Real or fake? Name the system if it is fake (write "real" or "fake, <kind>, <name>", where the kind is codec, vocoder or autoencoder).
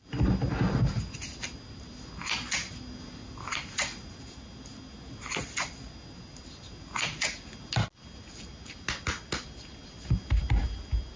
real